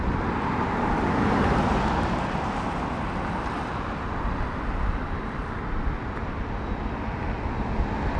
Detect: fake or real real